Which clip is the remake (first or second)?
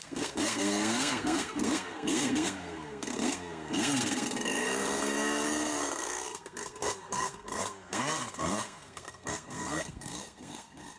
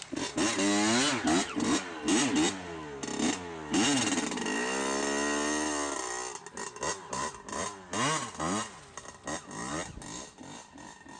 first